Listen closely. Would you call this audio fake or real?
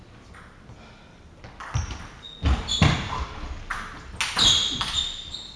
real